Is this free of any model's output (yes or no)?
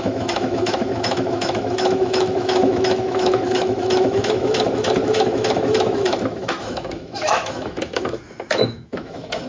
no